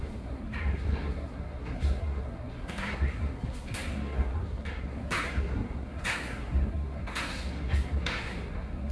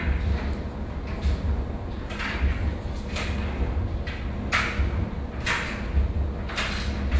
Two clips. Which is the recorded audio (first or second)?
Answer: second